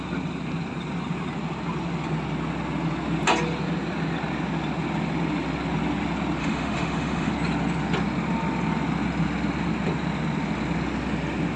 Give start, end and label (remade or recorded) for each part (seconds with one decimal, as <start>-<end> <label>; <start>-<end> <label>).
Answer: 0.0-6.4 recorded; 6.4-7.3 remade; 7.3-11.6 recorded